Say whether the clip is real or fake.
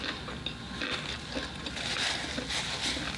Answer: real